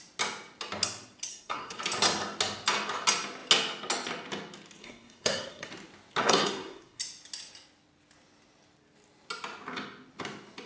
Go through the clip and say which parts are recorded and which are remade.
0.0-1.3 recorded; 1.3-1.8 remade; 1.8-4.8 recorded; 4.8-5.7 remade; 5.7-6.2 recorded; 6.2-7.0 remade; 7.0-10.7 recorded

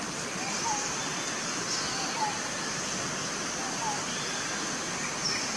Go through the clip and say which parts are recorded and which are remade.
0.0-5.6 recorded

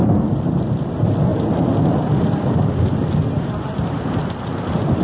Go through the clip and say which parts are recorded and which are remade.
0.0-1.3 remade; 1.3-4.3 recorded; 4.3-5.0 remade

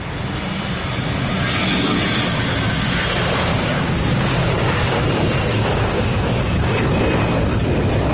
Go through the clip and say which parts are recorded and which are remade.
0.0-3.5 recorded; 3.5-5.0 remade; 5.0-5.5 recorded; 5.5-6.4 remade; 6.4-8.1 recorded

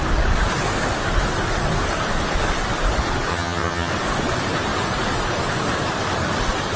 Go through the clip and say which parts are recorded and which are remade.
0.0-3.3 recorded; 3.3-3.9 remade; 3.9-6.8 recorded

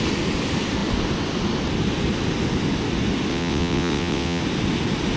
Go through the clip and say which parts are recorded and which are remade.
0.0-3.3 recorded; 3.3-4.4 remade; 4.4-5.2 recorded